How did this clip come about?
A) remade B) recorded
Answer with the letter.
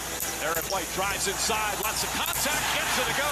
B